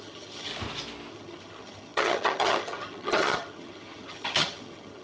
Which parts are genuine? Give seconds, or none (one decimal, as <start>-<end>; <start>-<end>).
0.5-1.1